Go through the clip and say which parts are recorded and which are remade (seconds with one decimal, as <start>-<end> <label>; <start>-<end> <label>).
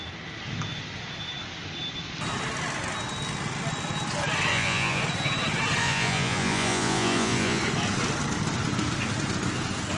0.0-4.5 recorded; 4.5-5.0 remade; 5.0-5.8 recorded; 5.8-7.6 remade; 7.6-10.0 recorded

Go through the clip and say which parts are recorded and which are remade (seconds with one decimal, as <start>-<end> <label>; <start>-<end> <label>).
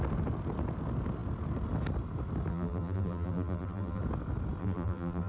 0.0-2.5 recorded; 2.5-4.0 remade; 4.0-4.6 recorded; 4.6-5.3 remade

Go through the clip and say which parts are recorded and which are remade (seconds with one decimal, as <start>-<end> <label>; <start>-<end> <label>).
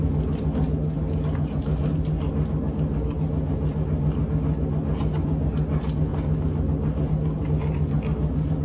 0.0-8.6 recorded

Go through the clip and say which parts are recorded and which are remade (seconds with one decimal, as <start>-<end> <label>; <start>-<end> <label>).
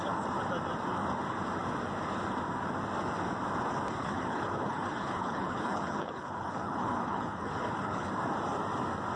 0.0-4.0 recorded; 4.0-8.1 remade; 8.1-9.2 recorded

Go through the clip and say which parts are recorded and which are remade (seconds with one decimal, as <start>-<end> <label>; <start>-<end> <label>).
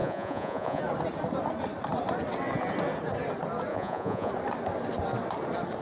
0.0-0.8 remade; 0.8-3.7 recorded; 3.7-4.3 remade; 4.3-5.8 recorded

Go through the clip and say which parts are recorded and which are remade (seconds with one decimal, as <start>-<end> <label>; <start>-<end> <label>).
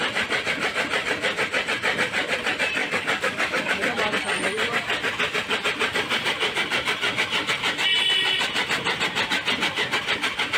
0.0-2.8 recorded; 2.8-3.7 remade; 3.7-10.6 recorded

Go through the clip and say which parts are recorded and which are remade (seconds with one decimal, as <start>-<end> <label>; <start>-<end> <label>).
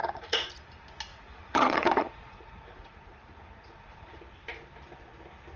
0.0-0.5 remade; 0.5-1.1 recorded; 1.1-4.2 remade; 4.2-5.6 recorded